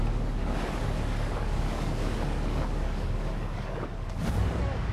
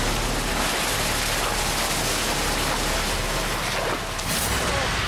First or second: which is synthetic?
first